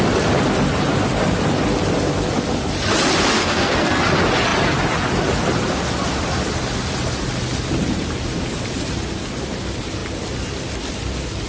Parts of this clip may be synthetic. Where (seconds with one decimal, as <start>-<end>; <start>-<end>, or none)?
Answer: 3.4-4.0